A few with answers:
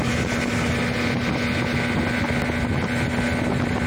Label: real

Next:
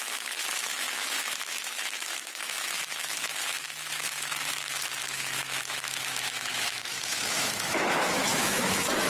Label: fake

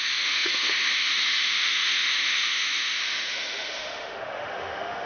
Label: fake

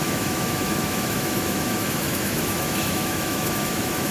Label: fake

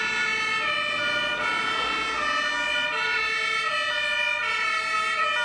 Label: real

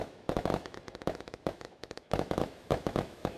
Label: fake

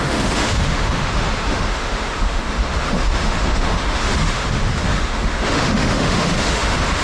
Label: fake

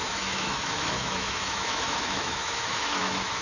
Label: fake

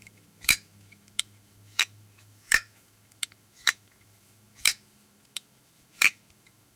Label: fake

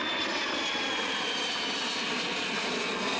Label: real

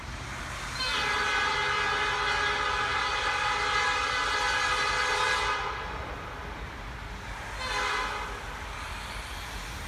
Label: real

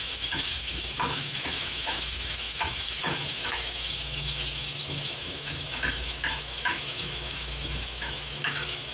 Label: fake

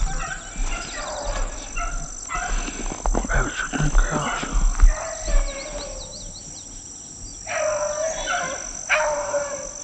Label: real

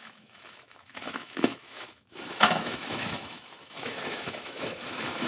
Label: fake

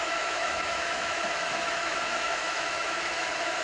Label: fake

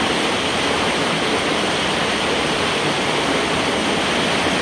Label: real